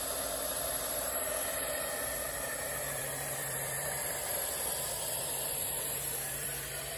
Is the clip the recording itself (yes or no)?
no